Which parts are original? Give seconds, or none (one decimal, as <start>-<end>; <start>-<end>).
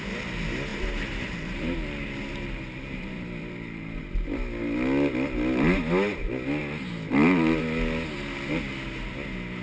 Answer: 0.0-0.7; 4.0-9.6